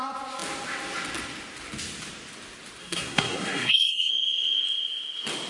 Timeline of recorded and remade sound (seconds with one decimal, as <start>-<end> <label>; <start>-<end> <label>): 0.0-2.8 recorded; 2.8-4.1 remade; 4.1-5.5 recorded